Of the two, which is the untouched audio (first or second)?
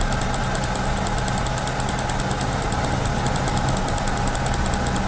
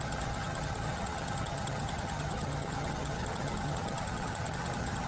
first